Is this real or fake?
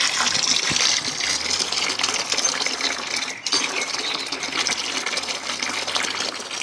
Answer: real